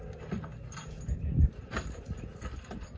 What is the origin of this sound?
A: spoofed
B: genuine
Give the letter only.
B